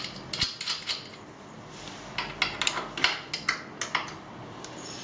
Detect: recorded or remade recorded